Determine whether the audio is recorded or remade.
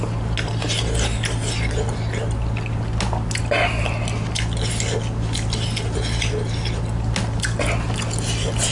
recorded